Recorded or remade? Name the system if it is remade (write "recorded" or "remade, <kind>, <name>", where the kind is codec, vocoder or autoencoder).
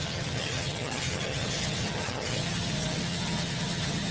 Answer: remade, vocoder, HiFi-GAN